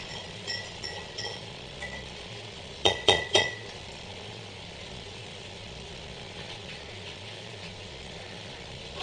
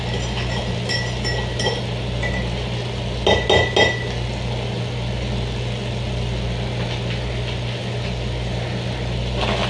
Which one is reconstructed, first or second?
first